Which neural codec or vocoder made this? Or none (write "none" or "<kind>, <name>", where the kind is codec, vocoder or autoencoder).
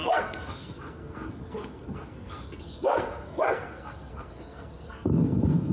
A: codec, SNAC